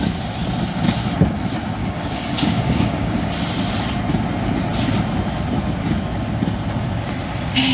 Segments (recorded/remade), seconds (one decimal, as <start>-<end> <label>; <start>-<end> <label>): 0.0-1.8 recorded; 1.8-3.3 remade; 3.3-7.7 recorded